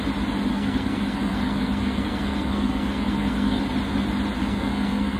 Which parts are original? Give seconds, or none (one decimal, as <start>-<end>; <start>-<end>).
0.0-0.5; 3.6-4.4